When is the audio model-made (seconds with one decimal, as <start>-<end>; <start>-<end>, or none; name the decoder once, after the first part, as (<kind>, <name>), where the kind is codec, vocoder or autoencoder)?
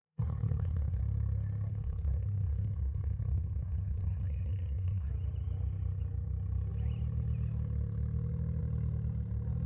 0.0-1.0 (codec, SNAC); 1.7-5.1